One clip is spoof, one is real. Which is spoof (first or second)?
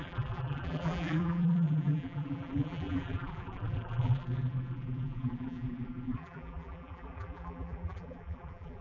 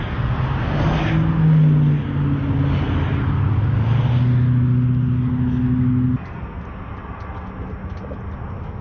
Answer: first